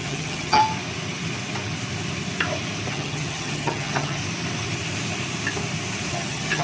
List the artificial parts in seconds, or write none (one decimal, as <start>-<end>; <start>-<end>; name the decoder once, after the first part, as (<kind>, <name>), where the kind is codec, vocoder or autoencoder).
0.0-0.6 (vocoder, HiFi-GAN); 2.9-4.2; 6.1-6.6